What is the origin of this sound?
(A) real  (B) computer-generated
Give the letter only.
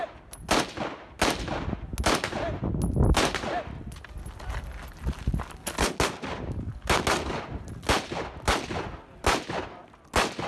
A